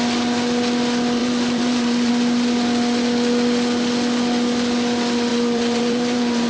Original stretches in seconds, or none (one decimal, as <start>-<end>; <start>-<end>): 0.0-1.2; 2.1-5.3